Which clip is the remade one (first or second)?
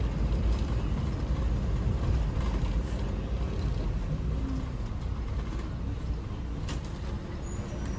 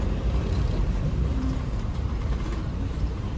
second